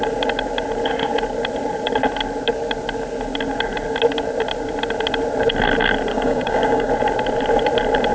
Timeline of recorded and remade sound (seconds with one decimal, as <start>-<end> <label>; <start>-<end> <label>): 0.0-6.1 recorded; 6.1-6.9 remade; 6.9-8.1 recorded